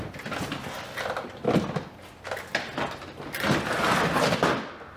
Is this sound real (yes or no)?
yes